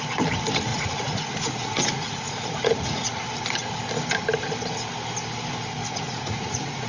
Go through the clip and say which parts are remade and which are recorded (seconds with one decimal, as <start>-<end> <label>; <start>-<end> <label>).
0.0-0.7 recorded; 0.7-3.0 remade; 3.0-5.8 recorded; 5.8-6.9 remade

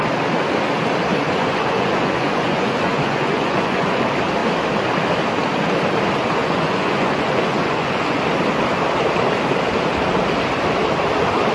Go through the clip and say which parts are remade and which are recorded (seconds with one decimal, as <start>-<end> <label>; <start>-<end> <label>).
0.0-1.1 recorded; 1.1-4.0 remade; 4.0-6.4 recorded; 6.4-8.2 remade; 8.2-11.5 recorded

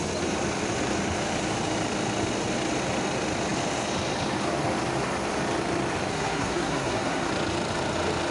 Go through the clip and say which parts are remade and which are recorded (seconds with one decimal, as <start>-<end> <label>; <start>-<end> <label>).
0.0-6.1 recorded; 6.1-7.3 remade; 7.3-8.3 recorded

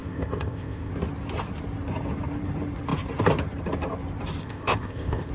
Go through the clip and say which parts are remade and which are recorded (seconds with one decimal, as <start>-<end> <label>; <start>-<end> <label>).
0.0-0.9 remade; 0.9-4.4 recorded; 4.4-5.3 remade

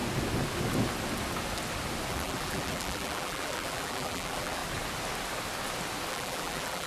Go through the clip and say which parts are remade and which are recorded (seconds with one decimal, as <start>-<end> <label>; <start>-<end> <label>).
0.0-2.1 recorded; 2.1-4.6 remade; 4.6-6.1 recorded; 6.1-6.9 remade